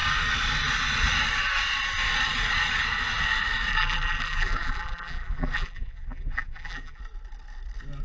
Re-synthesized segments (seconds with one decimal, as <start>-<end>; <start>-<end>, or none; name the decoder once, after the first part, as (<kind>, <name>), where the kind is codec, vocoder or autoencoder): 3.7-7.0 (vocoder, BigVGAN v2)